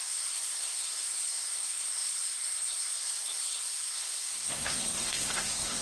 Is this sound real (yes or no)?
no